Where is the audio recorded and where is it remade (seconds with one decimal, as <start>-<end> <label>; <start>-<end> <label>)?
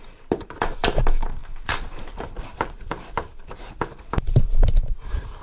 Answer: 0.0-5.4 remade